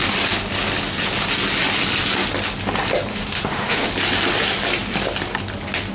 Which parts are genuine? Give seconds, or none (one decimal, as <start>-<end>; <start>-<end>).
0.0-3.1; 3.9-5.9